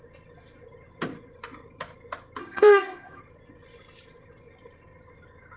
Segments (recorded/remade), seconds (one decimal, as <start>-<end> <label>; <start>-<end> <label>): 0.0-2.4 recorded; 2.4-3.2 remade; 3.2-5.6 recorded

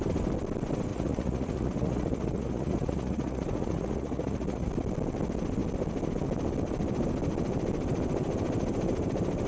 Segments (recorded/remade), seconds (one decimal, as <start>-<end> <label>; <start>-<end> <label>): 0.0-0.9 recorded; 0.9-4.7 remade; 4.7-9.5 recorded

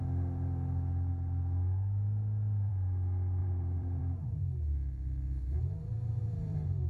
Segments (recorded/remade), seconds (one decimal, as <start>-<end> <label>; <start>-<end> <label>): 0.0-3.4 recorded; 3.4-4.0 remade; 4.0-5.6 recorded; 5.6-6.9 remade

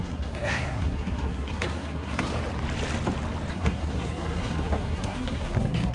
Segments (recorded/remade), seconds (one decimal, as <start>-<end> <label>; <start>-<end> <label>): 0.0-2.3 remade; 2.3-3.5 recorded; 3.5-5.9 remade